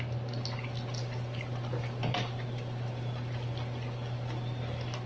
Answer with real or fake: real